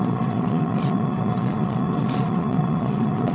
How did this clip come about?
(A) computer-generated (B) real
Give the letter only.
A